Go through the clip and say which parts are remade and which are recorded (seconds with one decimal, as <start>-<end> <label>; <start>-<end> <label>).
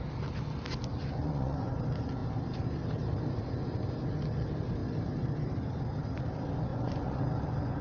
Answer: 0.0-1.0 recorded; 1.0-1.7 remade; 1.7-6.7 recorded; 6.7-7.2 remade; 7.2-7.8 recorded